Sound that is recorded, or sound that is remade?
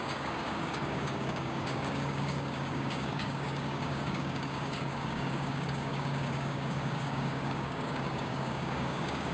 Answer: remade